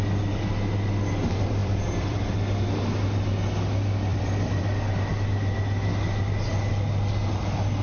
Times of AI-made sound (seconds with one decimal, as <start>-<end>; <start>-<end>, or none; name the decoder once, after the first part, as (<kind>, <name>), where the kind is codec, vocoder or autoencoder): 1.6-2.7 (vocoder, BigVGAN v2); 4.1-4.6